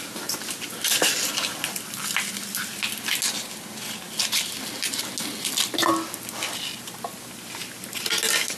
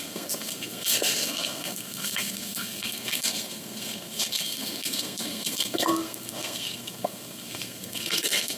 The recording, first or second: first